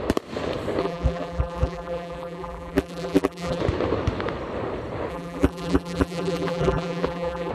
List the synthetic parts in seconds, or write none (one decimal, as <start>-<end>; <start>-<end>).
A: 0.8-3.6; 5.1-7.5